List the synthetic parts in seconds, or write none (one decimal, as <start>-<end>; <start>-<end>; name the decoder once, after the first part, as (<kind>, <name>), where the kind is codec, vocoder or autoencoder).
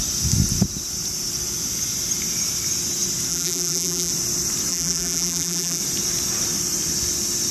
3.3-4.1 (vocoder, BigVGAN v2); 4.7-5.8